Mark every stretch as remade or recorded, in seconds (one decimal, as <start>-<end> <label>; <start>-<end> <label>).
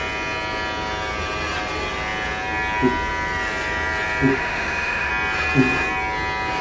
0.0-4.3 recorded; 4.3-5.1 remade; 5.1-6.6 recorded